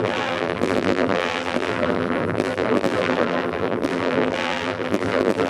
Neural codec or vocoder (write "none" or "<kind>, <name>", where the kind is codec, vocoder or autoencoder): vocoder, BigVGAN v2